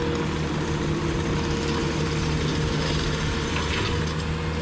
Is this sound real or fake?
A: real